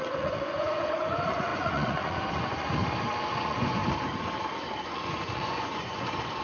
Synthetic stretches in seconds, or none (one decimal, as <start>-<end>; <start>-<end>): 0.0-2.8; 3.3-3.8; 4.8-6.4